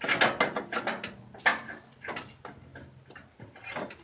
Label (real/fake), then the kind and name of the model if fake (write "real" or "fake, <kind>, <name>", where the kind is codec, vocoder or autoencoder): real